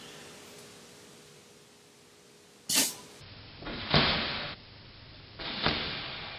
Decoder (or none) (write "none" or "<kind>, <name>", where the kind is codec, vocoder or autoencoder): none